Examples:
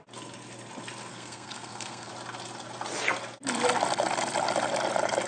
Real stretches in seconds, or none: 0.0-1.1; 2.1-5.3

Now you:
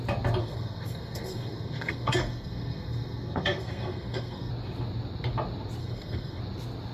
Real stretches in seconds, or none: 0.0-0.4; 4.5-5.8; 6.4-6.9

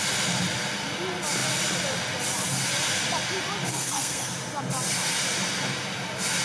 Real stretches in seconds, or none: 0.0-3.7; 4.3-6.4